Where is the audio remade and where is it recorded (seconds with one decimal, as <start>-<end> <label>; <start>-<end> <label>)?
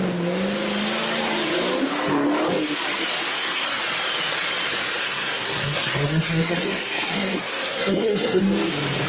0.0-3.3 recorded; 3.3-3.8 remade; 3.8-5.0 recorded; 5.0-8.4 remade; 8.4-9.1 recorded